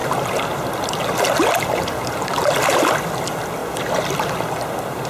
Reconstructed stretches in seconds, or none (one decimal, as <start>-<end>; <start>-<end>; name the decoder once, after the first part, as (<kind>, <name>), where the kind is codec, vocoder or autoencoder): none

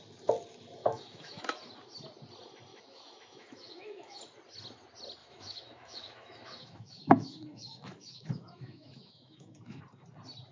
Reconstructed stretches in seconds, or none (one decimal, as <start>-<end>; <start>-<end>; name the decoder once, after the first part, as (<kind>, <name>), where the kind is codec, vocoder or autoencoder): 0.8-1.4 (autoencoder, DAC-VAE); 2.7-4.2; 5.2-9.8

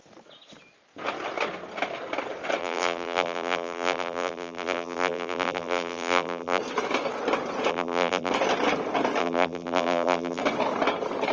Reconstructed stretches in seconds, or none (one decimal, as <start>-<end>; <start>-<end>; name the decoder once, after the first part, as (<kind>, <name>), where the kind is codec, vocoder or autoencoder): 2.6-6.6 (vocoder, BigVGAN v2); 7.7-8.3; 9.2-10.4

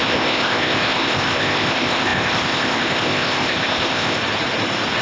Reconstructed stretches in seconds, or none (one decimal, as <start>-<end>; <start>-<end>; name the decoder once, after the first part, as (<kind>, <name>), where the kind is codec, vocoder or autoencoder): 0.0-4.2 (codec, ZipCodec)

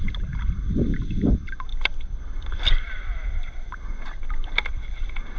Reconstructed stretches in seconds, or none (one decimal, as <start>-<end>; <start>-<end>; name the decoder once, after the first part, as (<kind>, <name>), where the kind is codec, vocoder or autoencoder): 1.7-4.9 (vocoder, BigVGAN v2)

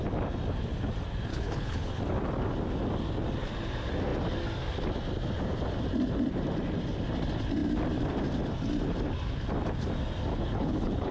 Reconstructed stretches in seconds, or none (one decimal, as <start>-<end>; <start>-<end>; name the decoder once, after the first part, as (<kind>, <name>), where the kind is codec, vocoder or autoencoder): 1.3-2.0 (codec, HILCodec); 10.3-11.1